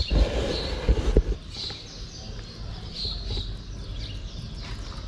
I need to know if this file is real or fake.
real